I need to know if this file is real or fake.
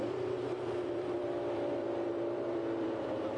fake